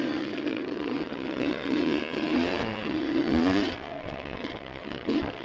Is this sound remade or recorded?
remade